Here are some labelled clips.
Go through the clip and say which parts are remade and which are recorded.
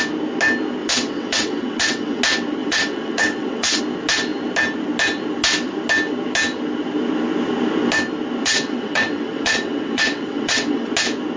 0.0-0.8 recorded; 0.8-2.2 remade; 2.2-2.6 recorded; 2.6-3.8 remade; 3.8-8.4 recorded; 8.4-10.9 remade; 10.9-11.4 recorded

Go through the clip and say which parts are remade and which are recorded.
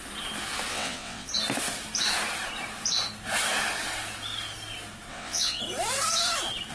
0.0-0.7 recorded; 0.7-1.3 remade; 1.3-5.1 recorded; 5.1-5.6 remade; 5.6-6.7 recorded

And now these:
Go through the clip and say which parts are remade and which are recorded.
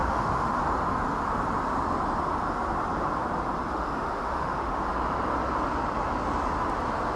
0.0-0.6 remade; 0.6-3.7 recorded; 3.7-4.9 remade; 4.9-7.2 recorded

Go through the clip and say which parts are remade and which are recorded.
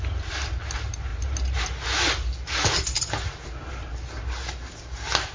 0.0-5.3 recorded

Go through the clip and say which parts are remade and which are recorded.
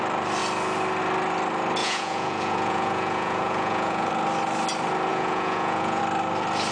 0.0-1.8 recorded; 1.8-4.1 remade; 4.1-5.1 recorded; 5.1-6.0 remade; 6.0-6.7 recorded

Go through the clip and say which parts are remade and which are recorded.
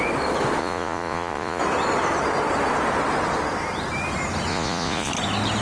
0.0-0.6 recorded; 0.6-1.6 remade; 1.6-4.5 recorded; 4.5-5.1 remade; 5.1-5.6 recorded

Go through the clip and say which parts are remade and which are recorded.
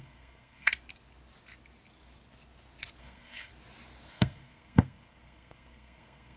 0.0-0.7 remade; 0.7-3.0 recorded; 3.0-3.5 remade; 3.5-4.1 recorded; 4.1-6.4 remade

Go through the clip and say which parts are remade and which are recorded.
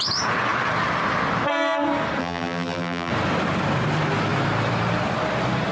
0.0-2.2 recorded; 2.2-3.1 remade; 3.1-5.7 recorded